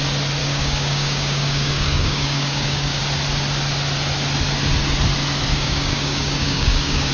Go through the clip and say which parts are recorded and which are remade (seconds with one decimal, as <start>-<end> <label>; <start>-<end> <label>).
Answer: 0.0-0.4 recorded; 0.4-3.0 remade; 3.0-5.5 recorded; 5.5-7.1 remade